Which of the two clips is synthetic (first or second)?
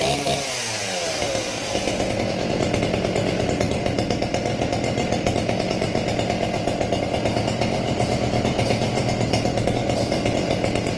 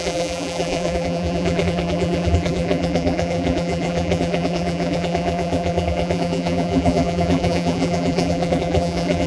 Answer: second